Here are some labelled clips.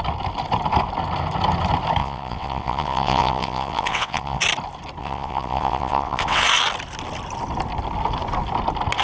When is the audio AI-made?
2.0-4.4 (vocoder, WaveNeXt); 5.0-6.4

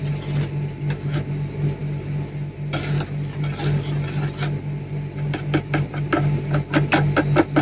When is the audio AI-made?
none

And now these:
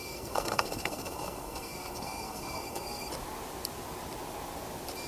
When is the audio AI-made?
0.0-3.1 (codec, SNAC)